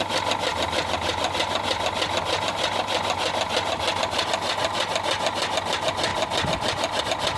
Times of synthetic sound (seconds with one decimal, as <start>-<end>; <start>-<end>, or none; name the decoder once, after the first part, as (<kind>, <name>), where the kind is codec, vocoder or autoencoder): none